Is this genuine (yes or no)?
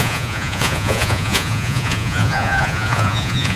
no